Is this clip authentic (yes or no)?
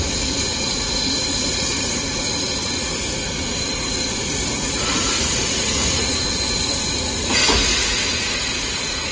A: no